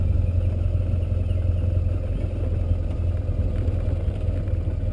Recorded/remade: recorded